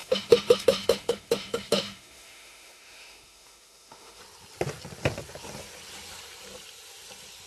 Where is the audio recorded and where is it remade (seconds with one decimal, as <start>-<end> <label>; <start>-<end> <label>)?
0.0-4.2 remade; 4.2-7.5 recorded